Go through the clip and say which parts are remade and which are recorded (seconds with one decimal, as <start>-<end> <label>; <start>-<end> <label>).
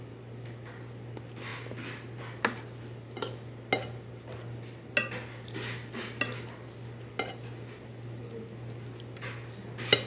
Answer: 0.0-10.1 recorded